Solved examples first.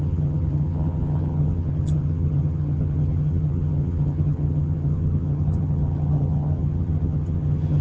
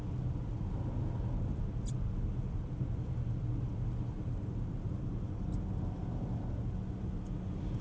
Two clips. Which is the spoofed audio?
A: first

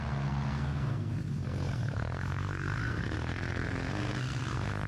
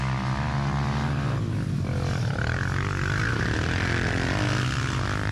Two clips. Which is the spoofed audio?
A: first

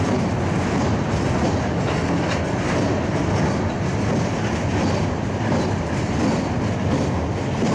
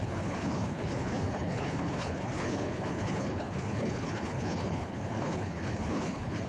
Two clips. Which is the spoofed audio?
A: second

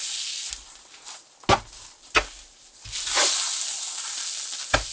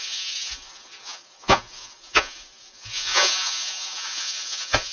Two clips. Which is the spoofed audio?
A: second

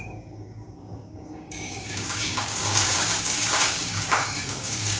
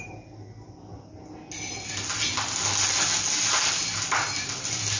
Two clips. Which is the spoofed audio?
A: first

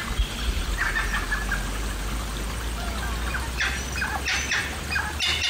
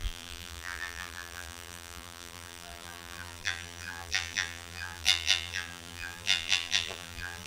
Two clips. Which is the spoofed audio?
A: second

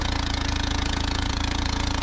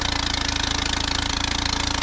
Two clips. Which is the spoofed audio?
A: first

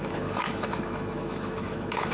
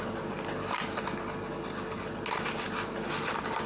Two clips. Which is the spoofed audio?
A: first